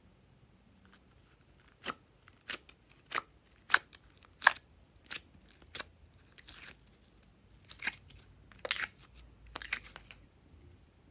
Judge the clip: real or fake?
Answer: real